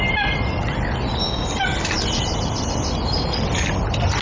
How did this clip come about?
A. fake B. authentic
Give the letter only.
B